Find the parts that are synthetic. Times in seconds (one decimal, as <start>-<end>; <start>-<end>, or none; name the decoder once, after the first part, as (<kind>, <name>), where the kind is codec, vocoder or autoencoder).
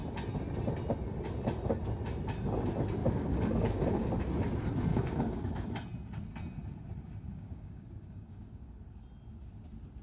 3.0-4.2 (codec, DAC); 4.9-5.7; 7.3-8.8